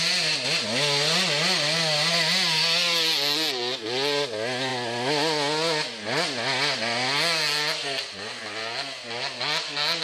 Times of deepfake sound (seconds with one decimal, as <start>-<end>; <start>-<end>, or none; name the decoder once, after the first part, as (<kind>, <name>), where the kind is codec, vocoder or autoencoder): none